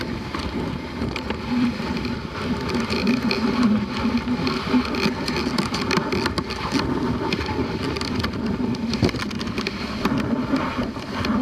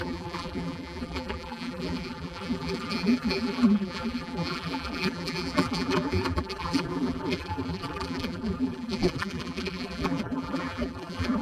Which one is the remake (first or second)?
second